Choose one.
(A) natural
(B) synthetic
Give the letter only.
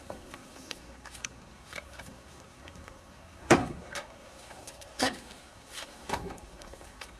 B